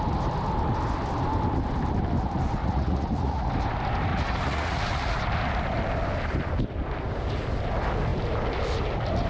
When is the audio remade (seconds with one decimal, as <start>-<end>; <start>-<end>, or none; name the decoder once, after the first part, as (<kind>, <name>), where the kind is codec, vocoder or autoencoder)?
2.6-3.5 (vocoder, Vocos); 4.1-5.2